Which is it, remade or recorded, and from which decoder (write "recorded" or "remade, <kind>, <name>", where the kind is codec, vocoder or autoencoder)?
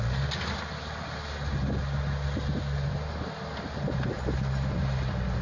recorded